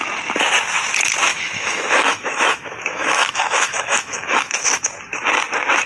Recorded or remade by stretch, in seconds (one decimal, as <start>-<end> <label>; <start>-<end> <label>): 0.0-1.3 recorded; 1.3-4.8 remade; 4.8-5.9 recorded